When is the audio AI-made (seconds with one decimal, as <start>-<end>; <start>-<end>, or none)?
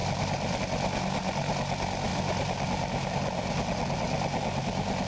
0.0-0.6; 2.1-5.1